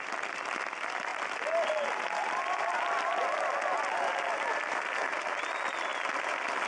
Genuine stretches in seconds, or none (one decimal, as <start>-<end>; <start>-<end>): 0.0-6.7